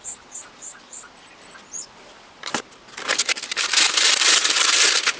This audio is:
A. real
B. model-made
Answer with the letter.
A